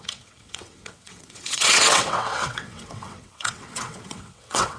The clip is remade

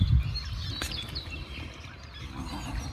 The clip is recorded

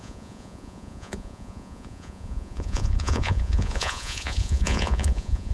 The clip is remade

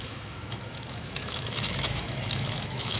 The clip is remade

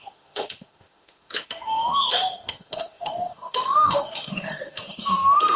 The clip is remade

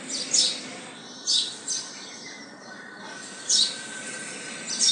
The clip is recorded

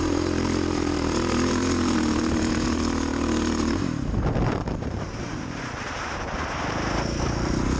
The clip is remade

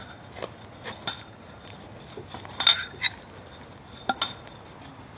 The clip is recorded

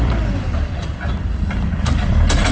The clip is remade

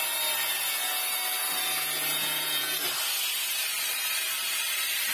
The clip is remade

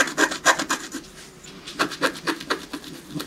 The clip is recorded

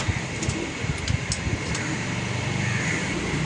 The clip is recorded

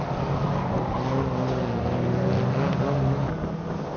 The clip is recorded